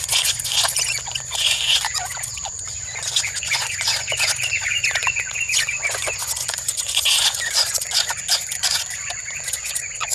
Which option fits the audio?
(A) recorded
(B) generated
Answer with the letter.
B